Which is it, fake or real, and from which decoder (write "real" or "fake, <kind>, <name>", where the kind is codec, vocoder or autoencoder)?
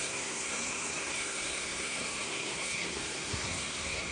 fake, codec, SNAC